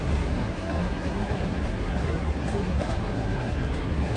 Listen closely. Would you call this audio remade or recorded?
remade